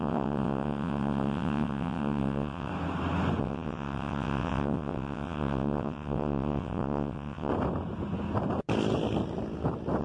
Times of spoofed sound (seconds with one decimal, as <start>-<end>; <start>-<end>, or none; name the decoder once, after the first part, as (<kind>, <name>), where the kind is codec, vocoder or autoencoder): 0.0-2.7 (vocoder, WaveNeXt); 3.4-7.5